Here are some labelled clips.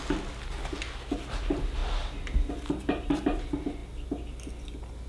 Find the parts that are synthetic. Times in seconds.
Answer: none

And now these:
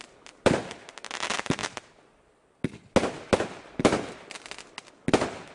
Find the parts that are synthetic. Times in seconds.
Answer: none